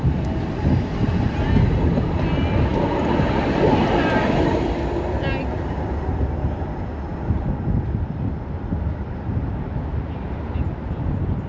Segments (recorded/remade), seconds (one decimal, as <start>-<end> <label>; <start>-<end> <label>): 0.0-11.5 recorded